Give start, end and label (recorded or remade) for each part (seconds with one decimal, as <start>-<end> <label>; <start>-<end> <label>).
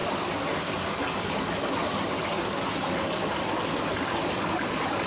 0.0-5.1 recorded